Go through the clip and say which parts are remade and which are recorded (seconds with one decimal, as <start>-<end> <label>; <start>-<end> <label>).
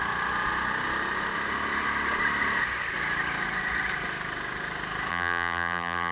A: 0.0-5.1 recorded; 5.1-6.1 remade